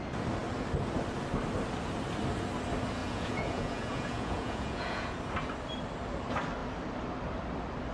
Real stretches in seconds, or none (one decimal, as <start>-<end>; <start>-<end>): 0.0-3.0; 5.2-7.9